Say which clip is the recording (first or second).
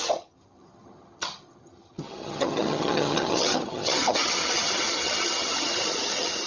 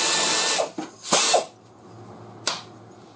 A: second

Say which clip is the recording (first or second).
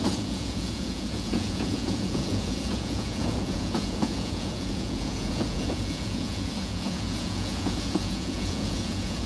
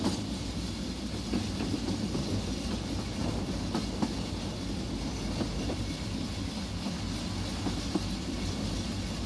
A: second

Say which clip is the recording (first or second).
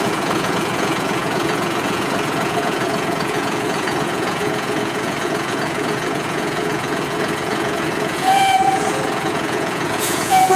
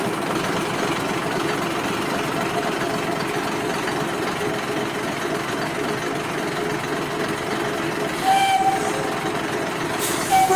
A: second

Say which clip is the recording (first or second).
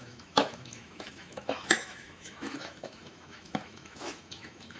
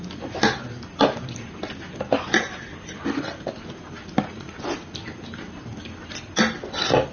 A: second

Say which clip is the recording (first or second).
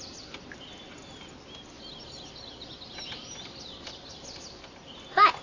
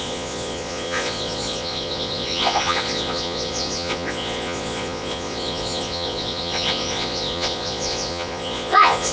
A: first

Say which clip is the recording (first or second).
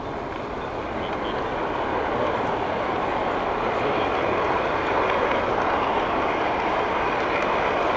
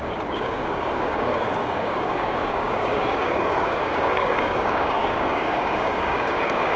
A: first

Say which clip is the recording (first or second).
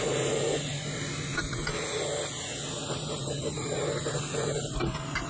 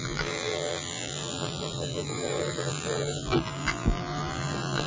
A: first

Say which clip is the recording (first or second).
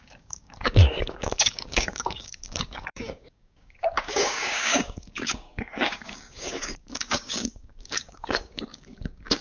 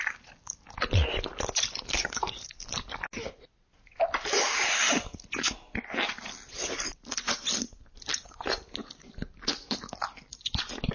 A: second